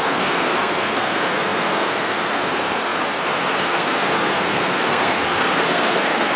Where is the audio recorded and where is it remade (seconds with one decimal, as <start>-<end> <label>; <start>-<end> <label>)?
0.0-6.4 remade